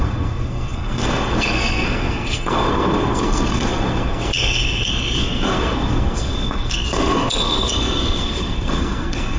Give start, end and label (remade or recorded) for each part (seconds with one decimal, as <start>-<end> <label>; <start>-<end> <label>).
0.0-9.4 remade